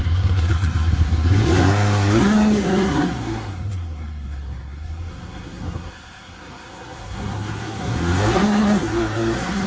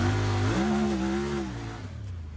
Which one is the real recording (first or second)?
second